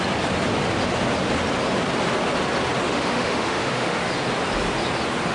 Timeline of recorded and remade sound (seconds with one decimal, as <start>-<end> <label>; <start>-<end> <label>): 0.0-2.8 recorded; 2.8-4.0 remade; 4.0-5.3 recorded

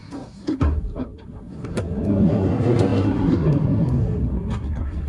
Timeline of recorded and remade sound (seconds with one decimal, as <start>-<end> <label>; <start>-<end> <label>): 0.0-5.1 remade

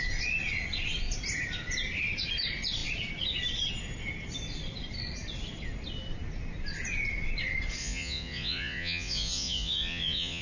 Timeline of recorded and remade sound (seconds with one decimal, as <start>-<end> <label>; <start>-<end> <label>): 0.0-7.8 recorded; 7.8-10.4 remade